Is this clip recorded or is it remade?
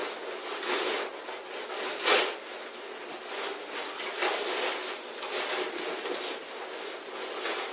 recorded